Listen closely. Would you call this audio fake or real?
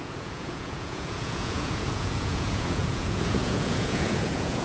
fake